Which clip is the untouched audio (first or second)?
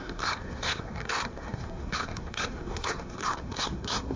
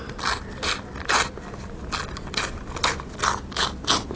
second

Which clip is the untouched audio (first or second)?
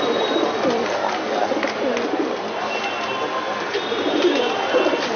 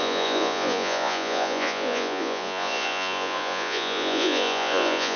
first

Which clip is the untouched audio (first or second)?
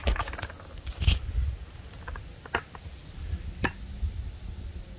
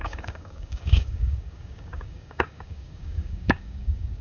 first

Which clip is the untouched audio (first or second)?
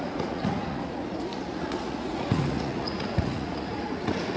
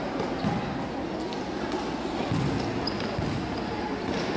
second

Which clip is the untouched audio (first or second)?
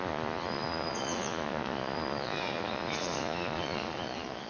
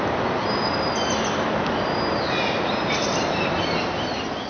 second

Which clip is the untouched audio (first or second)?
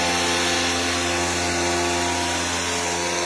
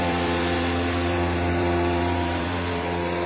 first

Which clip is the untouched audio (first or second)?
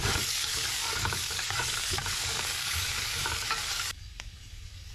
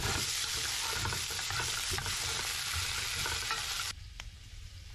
second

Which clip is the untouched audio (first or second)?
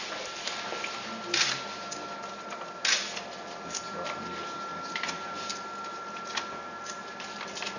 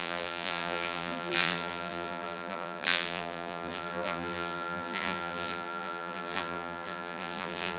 first